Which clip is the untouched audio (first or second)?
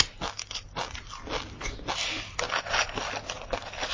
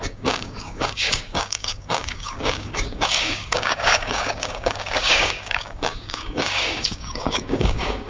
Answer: first